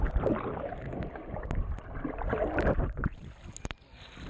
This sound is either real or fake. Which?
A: real